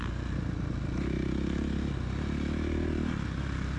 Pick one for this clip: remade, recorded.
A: recorded